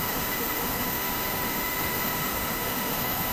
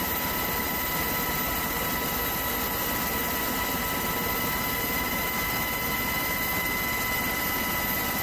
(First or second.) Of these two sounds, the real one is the second